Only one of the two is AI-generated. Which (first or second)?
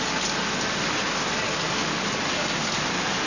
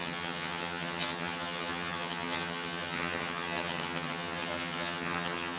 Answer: second